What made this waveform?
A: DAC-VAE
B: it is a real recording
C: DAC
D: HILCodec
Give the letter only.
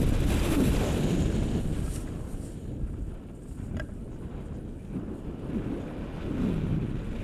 B